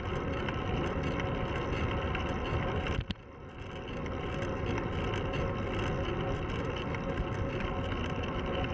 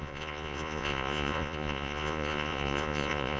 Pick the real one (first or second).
first